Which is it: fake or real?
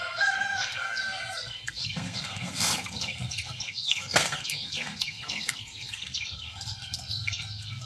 fake